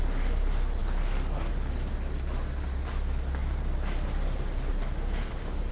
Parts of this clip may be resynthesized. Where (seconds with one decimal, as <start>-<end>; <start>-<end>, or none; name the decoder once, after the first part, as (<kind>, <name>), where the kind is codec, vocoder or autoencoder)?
0.8-1.5 (codec, DAC)